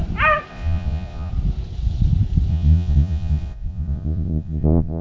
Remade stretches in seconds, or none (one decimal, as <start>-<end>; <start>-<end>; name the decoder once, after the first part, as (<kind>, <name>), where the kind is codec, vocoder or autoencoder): 0.5-1.3 (vocoder, Vocos); 2.5-5.0